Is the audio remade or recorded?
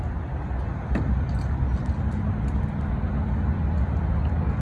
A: recorded